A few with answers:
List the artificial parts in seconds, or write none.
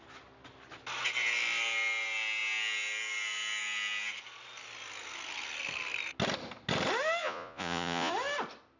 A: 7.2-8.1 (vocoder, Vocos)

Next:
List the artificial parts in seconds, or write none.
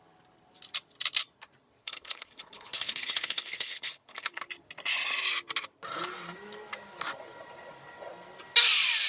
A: 1.8-4.4 (codec, HILCodec)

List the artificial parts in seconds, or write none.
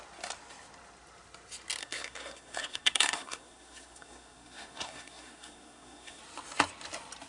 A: 1.8-6.2 (codec, SNAC)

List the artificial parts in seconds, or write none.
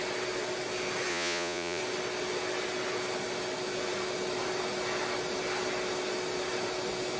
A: 1.1-1.8 (vocoder, Vocos)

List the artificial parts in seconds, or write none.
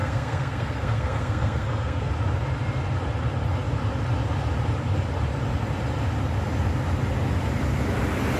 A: 0.0-2.1 (codec, SNAC)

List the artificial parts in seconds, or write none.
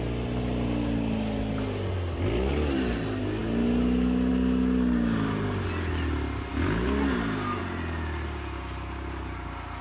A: none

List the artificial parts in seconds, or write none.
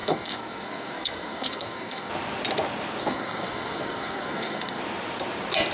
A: 0.0-2.1 (codec, SNAC); 3.0-4.8